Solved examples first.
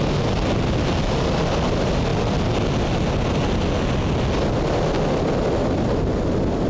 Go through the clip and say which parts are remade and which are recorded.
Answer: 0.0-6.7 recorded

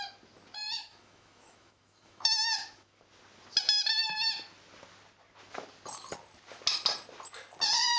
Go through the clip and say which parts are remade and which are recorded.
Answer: 0.0-0.6 recorded; 0.6-3.0 remade; 3.0-8.0 recorded

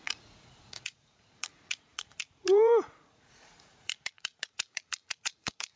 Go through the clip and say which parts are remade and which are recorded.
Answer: 0.0-5.8 remade